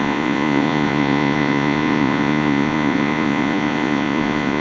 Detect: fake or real fake